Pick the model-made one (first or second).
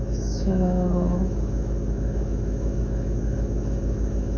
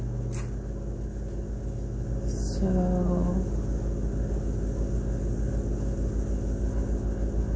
first